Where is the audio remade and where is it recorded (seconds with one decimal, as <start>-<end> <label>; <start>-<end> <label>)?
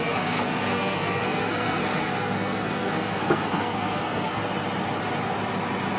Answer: 0.0-4.4 remade; 4.4-6.0 recorded